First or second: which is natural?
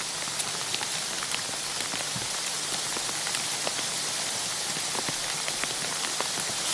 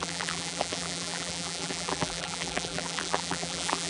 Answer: first